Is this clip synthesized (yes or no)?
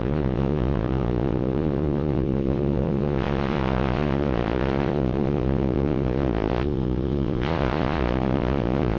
yes